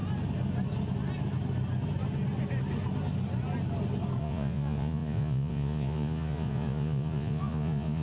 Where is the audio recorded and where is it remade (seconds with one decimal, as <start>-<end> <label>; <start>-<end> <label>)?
0.0-4.2 recorded; 4.2-8.0 remade